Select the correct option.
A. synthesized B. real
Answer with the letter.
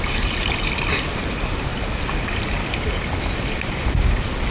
B